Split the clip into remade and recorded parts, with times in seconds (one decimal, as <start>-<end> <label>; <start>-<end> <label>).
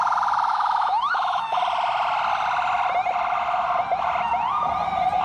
0.0-0.5 recorded; 0.5-1.6 remade; 1.6-5.2 recorded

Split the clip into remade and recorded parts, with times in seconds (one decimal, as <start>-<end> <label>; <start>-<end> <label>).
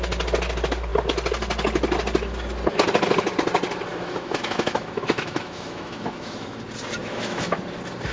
0.0-3.9 recorded; 3.9-6.6 remade; 6.6-7.0 recorded; 7.0-7.6 remade; 7.6-8.1 recorded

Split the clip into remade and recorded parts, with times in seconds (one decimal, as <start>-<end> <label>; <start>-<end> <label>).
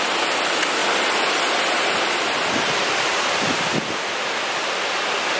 0.0-5.4 recorded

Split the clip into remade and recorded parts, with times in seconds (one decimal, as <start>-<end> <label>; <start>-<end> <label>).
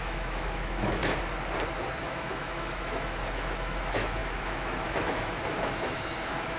0.0-1.0 remade; 1.0-2.0 recorded; 2.0-6.6 remade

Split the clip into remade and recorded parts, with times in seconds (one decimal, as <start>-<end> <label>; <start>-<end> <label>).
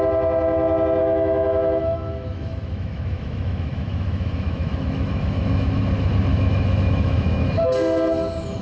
0.0-1.0 recorded; 1.0-5.8 remade; 5.8-6.3 recorded; 6.3-7.5 remade; 7.5-8.6 recorded